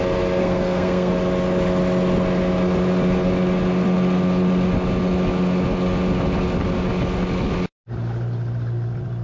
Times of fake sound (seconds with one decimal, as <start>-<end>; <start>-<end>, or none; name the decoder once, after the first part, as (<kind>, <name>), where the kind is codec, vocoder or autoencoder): 0.4-1.1 (codec, SNAC)